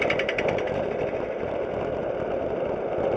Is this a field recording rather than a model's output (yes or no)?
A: yes